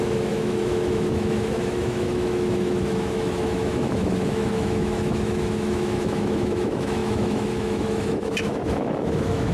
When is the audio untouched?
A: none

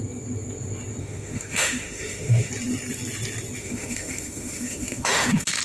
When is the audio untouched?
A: 0.0-1.0; 2.5-3.6

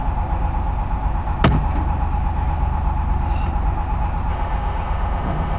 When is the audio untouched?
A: 0.0-4.3

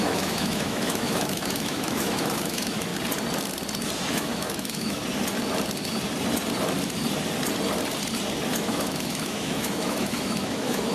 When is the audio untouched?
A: 2.9-4.1; 5.0-8.5

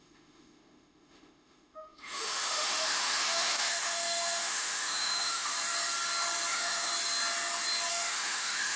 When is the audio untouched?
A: 5.5-6.5; 6.9-7.9

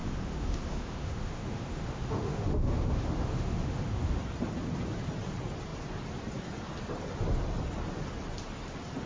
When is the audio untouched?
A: 4.2-9.1

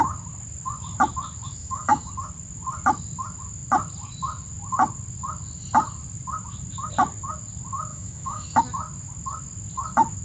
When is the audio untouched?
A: 0.0-1.6; 2.1-7.9; 8.6-10.2

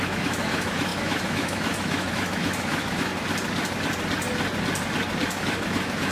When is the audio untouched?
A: 3.1-5.4